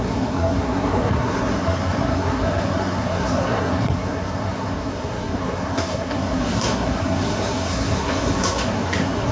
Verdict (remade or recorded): remade